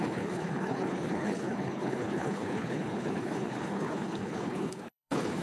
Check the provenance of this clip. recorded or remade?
remade